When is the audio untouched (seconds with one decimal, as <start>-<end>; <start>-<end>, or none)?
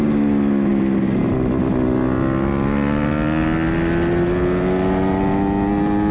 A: 0.0-6.1